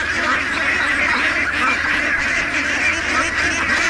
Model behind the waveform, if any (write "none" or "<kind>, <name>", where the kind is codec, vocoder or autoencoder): none